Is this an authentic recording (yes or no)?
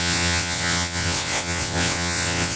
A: no